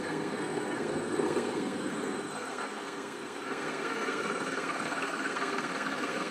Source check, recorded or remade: remade